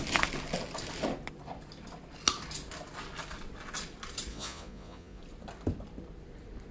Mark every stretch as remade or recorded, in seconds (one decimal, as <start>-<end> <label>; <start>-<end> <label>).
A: 0.0-4.3 recorded; 4.3-5.2 remade; 5.2-6.7 recorded